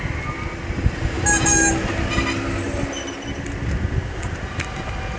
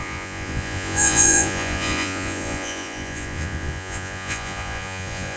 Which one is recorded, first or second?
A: first